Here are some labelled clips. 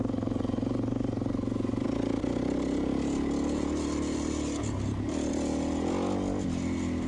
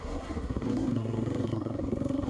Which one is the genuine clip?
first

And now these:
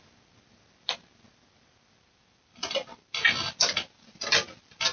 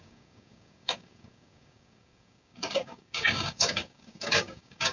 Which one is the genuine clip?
first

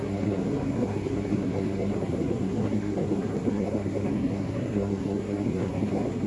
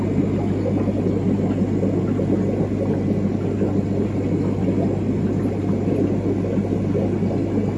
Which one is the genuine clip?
second